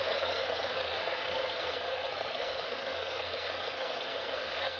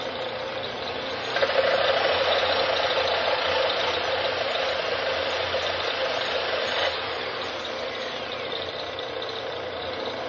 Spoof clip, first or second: first